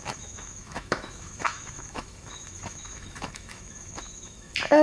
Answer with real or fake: fake